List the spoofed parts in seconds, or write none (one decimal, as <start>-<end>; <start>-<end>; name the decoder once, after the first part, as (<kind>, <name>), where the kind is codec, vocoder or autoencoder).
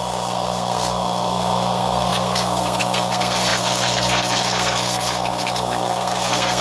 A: 0.0-6.6 (codec, SNAC)